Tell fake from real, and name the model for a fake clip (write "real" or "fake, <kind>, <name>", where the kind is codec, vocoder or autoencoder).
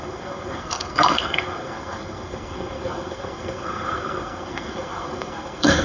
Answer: fake, codec, SNAC